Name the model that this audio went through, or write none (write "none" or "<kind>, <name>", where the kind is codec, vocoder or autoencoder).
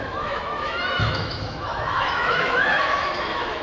autoencoder, DAC-VAE